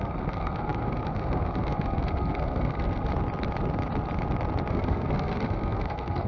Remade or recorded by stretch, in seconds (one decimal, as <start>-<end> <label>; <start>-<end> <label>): 0.0-3.1 remade; 3.1-4.7 recorded; 4.7-6.3 remade